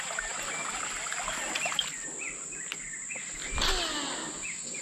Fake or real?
real